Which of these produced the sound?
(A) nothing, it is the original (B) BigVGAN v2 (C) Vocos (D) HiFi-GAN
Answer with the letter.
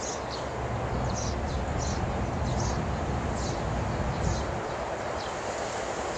A